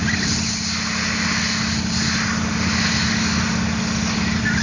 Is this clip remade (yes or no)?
no